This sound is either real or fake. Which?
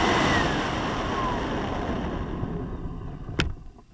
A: real